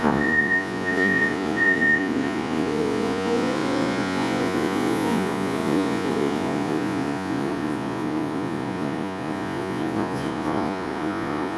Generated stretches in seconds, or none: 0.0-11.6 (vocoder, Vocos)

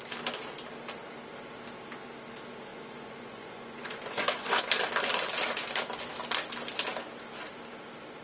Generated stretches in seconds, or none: 2.7-4.6 (vocoder, Vocos)